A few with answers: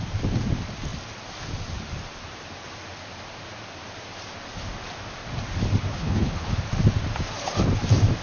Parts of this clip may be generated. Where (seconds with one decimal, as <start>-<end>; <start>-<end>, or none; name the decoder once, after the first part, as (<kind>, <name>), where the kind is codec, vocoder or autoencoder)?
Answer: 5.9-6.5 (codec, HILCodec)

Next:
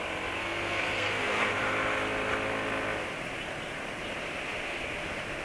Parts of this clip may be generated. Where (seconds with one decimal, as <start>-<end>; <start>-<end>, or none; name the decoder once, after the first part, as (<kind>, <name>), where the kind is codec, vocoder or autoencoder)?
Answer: 0.4-1.5 (codec, SNAC)

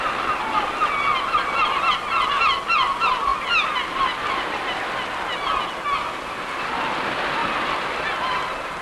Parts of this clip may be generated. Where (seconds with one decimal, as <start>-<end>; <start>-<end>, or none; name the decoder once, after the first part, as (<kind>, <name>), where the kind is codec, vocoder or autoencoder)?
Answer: none

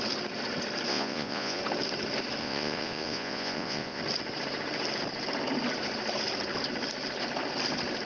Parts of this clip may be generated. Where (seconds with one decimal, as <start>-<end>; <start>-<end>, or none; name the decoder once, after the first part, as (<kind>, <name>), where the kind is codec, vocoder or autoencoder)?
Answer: 0.9-1.6 (vocoder, Vocos); 2.4-4.0

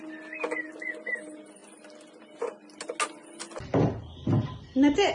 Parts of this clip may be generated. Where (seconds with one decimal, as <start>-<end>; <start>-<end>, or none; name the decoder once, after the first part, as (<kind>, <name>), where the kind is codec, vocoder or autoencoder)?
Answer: none

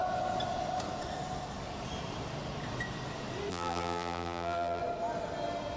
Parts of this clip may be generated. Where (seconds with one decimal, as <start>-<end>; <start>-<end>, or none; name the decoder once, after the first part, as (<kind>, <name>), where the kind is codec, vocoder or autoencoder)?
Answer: 3.5-4.8 (vocoder, BigVGAN v2)